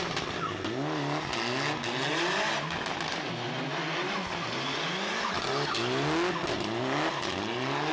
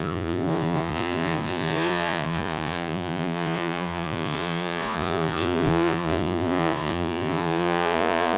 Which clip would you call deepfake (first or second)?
second